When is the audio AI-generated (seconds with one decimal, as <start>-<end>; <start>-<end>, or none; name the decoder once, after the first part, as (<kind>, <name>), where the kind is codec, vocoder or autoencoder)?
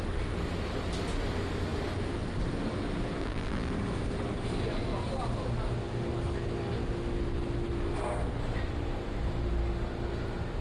3.2-3.7 (vocoder, BigVGAN v2)